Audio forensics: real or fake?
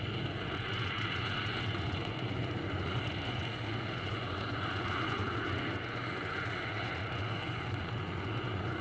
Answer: fake